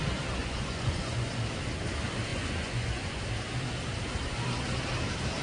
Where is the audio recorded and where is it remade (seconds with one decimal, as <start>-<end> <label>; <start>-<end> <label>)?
0.0-0.4 recorded; 0.4-1.3 remade; 1.3-2.3 recorded; 2.3-3.2 remade; 3.2-5.4 recorded